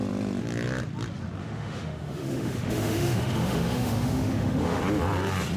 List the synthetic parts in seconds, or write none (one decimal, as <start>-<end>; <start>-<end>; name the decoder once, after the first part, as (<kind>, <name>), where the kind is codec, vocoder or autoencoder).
1.4-4.8 (autoencoder, DAC-VAE)